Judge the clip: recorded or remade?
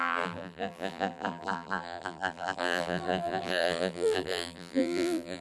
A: remade